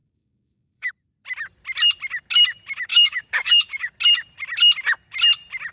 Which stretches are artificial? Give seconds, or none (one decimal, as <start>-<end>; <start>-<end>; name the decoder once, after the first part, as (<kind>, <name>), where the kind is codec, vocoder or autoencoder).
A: 0.0-0.9 (codec, DAC); 2.9-3.9